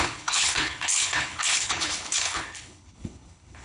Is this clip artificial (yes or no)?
yes